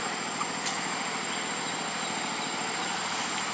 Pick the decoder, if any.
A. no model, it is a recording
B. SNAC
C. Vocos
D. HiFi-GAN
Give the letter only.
A